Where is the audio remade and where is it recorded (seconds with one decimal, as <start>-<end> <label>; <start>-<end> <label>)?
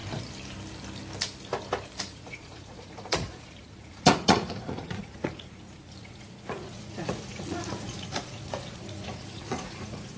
0.0-2.0 recorded; 2.0-10.2 remade